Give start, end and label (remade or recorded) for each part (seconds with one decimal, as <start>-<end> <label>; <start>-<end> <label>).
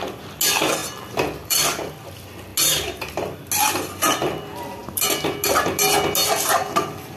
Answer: 0.0-0.8 recorded; 0.8-1.9 remade; 1.9-7.2 recorded